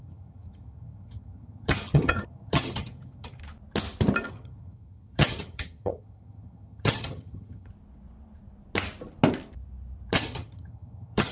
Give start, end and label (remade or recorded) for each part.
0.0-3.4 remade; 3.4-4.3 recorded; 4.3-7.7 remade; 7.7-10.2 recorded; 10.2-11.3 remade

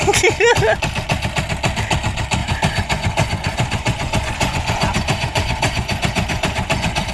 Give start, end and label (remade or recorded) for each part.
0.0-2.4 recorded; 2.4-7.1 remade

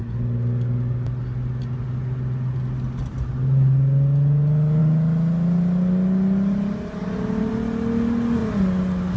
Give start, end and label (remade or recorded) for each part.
0.0-9.2 recorded

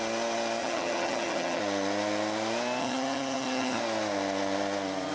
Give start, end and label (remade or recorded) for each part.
0.0-0.6 recorded; 0.6-1.6 remade; 1.6-2.8 recorded; 2.8-3.8 remade; 3.8-5.1 recorded

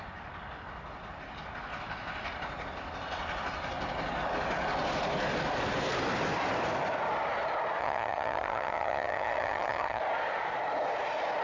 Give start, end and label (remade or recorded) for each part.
0.0-7.8 recorded; 7.8-10.0 remade; 10.0-11.4 recorded